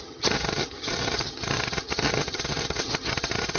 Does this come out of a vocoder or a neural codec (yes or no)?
yes